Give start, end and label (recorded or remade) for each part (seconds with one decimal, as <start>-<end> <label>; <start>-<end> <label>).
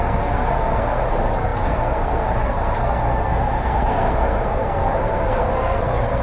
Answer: 0.0-6.2 remade